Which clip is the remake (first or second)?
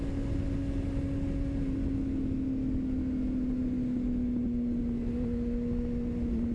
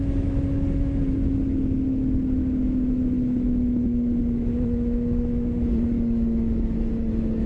second